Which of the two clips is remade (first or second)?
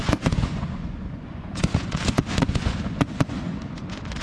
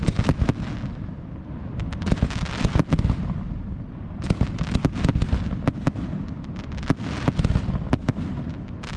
first